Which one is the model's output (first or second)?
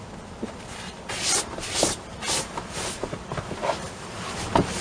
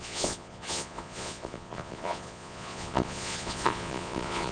second